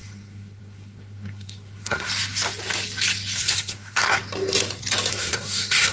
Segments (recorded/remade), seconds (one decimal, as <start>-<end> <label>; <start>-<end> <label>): 0.0-2.1 remade; 2.1-3.4 recorded; 3.4-4.2 remade; 4.2-5.1 recorded; 5.1-5.9 remade